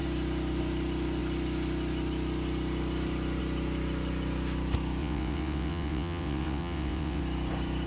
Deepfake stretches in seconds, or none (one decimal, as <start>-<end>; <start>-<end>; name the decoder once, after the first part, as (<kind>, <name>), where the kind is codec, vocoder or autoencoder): 5.0-7.2 (vocoder, WaveNeXt)